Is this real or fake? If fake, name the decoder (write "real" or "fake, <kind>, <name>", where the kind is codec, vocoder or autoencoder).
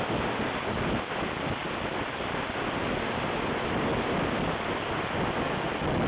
real